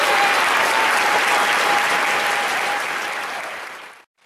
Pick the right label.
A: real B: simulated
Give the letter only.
B